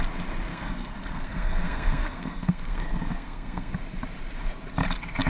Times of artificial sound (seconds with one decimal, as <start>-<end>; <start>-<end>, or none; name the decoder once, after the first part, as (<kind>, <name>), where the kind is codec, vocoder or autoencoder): 0.5-3.7 (codec, SNAC)

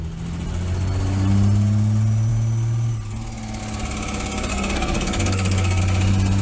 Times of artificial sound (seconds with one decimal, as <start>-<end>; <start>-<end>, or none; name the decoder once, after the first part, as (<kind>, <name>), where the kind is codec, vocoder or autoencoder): 4.5-5.8 (codec, SNAC)

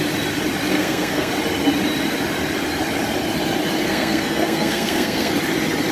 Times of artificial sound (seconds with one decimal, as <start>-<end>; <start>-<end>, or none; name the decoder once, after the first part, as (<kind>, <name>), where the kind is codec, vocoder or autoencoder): 0.7-1.3 (codec, SNAC); 3.8-5.3

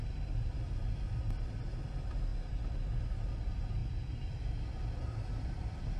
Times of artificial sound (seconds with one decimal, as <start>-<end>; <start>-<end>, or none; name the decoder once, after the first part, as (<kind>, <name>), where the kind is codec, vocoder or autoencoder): none